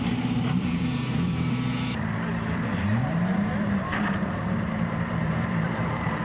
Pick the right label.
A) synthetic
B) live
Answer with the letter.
A